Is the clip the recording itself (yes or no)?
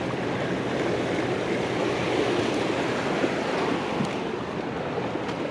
yes